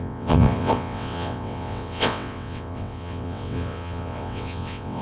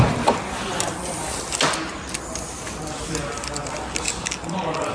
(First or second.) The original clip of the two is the second